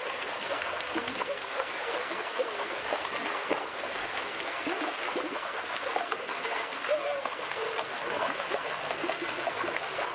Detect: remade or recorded remade